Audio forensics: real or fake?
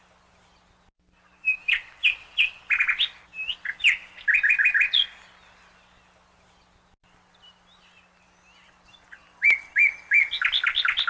real